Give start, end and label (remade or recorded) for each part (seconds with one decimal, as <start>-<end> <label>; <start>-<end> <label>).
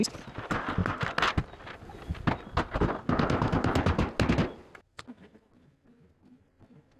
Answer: 0.0-7.0 recorded